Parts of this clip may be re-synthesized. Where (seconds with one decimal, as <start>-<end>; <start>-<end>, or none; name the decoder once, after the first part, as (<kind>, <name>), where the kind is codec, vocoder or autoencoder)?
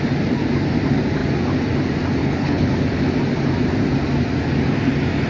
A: 2.2-2.7 (codec, HILCodec)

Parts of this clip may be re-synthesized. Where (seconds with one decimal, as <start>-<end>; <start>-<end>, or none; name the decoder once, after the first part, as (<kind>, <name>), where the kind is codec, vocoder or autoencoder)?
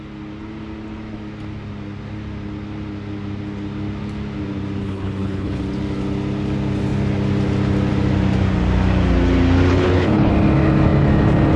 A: 4.8-5.6 (codec, HILCodec); 9.7-10.3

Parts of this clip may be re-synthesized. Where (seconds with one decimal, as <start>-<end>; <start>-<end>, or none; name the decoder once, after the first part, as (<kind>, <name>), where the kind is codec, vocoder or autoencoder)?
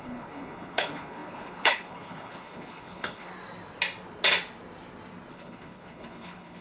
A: 0.0-3.3 (codec, HILCodec); 5.3-6.6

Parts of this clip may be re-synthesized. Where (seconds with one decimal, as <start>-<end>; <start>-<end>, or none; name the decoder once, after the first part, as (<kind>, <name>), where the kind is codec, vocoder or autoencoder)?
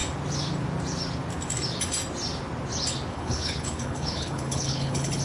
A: 3.1-5.2 (codec, HILCodec)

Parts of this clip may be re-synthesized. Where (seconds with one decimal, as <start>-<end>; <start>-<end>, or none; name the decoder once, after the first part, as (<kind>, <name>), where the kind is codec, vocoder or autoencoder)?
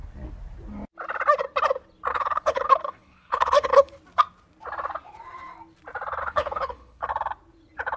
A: 2.1-3.9 (codec, HILCodec); 6.2-7.1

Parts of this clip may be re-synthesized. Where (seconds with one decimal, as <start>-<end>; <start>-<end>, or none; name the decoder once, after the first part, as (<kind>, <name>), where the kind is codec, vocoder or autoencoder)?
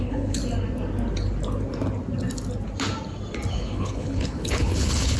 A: 0.0-0.4 (codec, HILCodec); 3.5-5.2